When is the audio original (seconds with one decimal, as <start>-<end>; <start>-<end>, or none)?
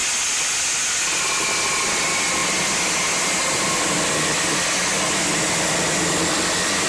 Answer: 0.0-6.9